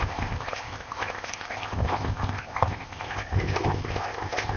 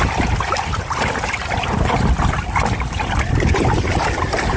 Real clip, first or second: second